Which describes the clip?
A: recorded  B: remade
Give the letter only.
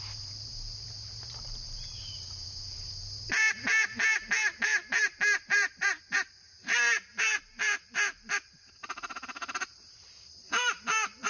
B